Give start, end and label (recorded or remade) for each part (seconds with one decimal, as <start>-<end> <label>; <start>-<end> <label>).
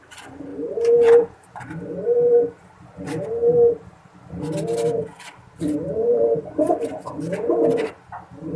0.0-0.5 recorded; 0.5-1.9 remade; 1.9-8.6 recorded